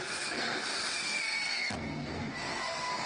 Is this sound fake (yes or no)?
yes